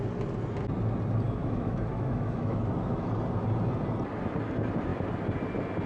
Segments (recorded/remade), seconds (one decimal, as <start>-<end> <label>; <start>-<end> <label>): 0.0-1.4 recorded; 1.4-3.1 remade; 3.1-5.9 recorded